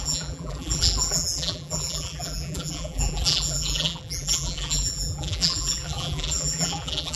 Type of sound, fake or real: fake